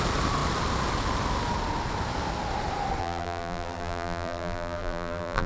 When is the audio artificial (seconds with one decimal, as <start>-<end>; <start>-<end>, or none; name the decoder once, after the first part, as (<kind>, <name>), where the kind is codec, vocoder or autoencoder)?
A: 3.0-5.5 (vocoder, BigVGAN v2)

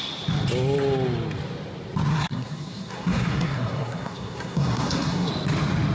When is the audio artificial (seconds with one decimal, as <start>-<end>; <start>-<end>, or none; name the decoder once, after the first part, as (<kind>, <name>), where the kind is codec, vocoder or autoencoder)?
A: 2.1-5.3 (codec, SNAC)